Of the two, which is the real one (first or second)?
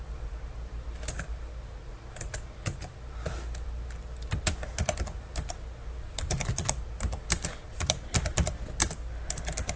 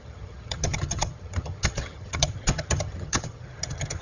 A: first